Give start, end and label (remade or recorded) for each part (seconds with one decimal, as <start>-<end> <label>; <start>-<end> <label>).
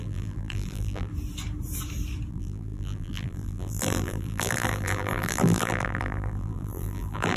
0.0-1.1 remade; 1.1-2.3 recorded; 2.3-7.4 remade